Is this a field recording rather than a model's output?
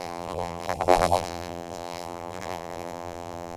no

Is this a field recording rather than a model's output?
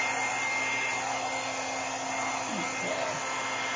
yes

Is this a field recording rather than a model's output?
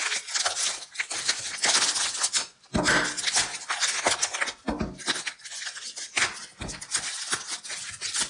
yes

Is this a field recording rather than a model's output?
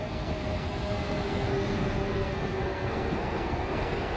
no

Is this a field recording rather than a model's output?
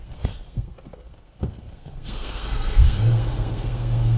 no